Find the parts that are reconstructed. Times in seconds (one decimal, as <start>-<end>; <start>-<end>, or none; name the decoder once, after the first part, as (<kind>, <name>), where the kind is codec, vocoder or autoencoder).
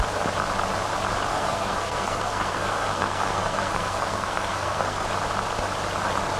1.3-5.1 (codec, SNAC)